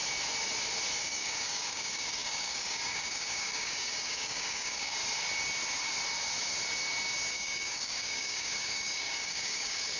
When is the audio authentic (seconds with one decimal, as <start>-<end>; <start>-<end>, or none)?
0.0-1.0; 5.0-7.3